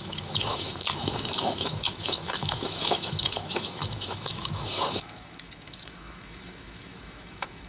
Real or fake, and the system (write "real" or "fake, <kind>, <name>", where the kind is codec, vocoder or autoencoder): fake, autoencoder, DAC-VAE